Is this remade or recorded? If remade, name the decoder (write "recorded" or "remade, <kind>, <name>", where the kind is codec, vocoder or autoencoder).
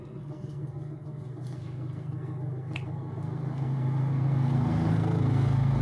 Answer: remade, codec, SNAC